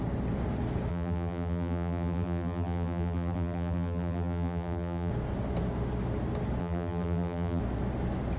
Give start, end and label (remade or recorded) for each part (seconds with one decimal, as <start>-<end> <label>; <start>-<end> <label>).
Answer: 0.0-0.9 recorded; 0.9-5.1 remade; 5.1-6.6 recorded; 6.6-7.6 remade; 7.6-8.4 recorded